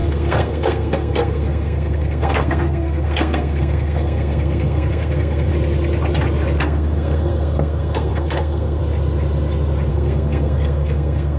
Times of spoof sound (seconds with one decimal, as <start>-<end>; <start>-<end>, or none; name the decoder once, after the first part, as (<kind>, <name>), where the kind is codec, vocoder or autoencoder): 0.0-5.5 (codec, SNAC); 6.6-8.8; 9.9-11.4